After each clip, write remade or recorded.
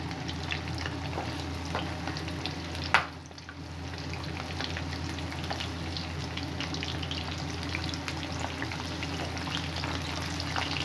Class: recorded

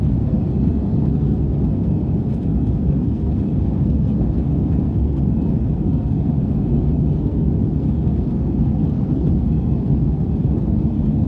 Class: remade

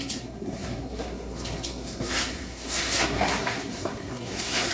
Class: remade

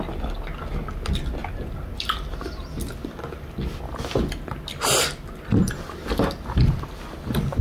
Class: recorded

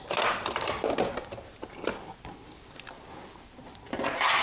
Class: recorded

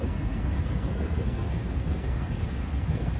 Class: remade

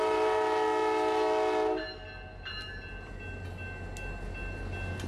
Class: recorded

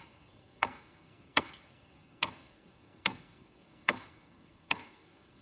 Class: remade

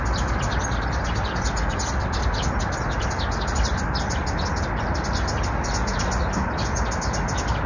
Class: recorded